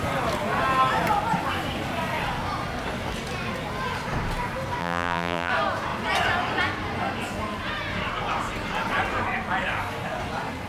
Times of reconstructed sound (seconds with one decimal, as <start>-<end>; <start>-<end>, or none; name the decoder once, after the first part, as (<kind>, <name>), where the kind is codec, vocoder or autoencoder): 4.8-5.5 (vocoder, BigVGAN v2)